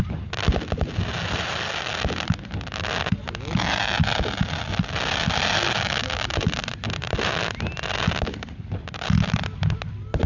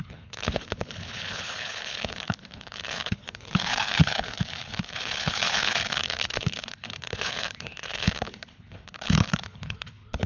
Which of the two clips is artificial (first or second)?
second